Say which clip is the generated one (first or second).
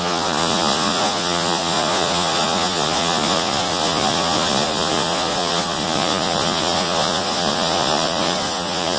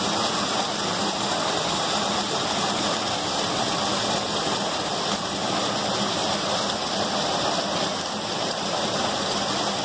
first